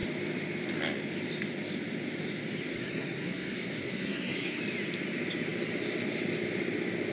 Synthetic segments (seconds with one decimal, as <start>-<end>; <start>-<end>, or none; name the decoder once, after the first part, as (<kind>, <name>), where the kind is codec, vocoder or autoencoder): 2.7-4.6 (codec, SNAC)